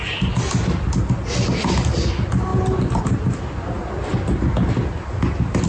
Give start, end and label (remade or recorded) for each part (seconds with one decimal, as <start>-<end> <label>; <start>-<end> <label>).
0.0-5.7 recorded

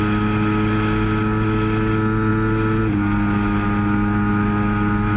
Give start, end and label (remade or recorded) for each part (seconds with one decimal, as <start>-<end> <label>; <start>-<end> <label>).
0.0-5.2 recorded

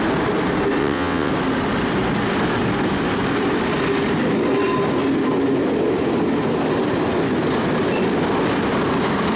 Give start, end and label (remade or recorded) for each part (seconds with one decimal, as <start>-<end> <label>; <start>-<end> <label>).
0.0-0.8 recorded; 0.8-1.3 remade; 1.3-9.4 recorded